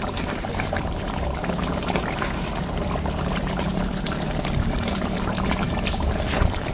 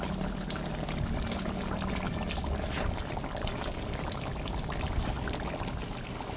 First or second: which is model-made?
first